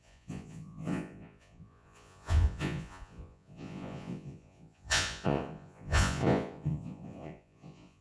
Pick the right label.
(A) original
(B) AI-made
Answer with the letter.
B